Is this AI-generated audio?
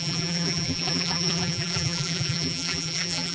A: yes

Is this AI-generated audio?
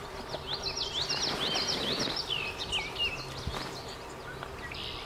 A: no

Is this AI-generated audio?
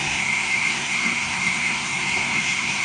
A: yes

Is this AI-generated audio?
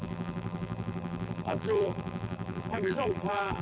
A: yes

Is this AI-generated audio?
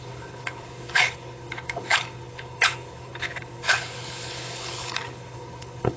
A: yes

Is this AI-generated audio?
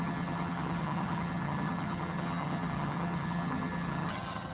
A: yes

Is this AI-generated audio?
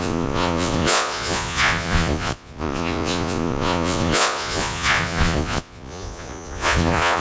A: yes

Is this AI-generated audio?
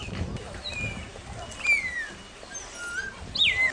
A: no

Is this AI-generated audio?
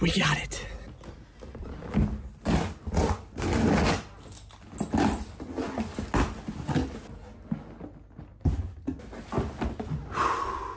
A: no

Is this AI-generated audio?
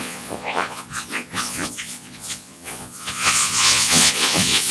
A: yes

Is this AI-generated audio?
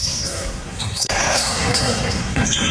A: yes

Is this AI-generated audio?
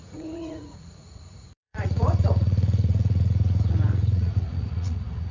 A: yes